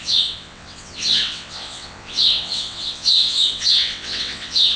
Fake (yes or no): yes